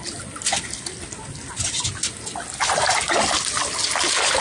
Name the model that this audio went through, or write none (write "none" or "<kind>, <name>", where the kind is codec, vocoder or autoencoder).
none